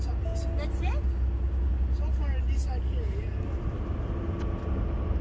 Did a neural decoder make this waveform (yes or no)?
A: no